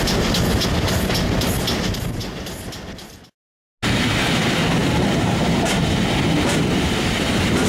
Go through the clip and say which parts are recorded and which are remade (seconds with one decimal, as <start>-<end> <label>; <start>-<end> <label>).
0.0-4.8 recorded; 4.8-6.0 remade; 6.0-7.7 recorded